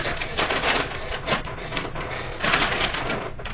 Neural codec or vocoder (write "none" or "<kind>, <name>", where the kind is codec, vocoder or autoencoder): vocoder, Vocos